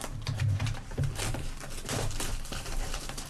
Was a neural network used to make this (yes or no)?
yes